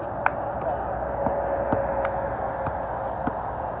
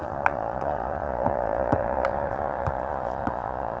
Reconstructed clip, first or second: second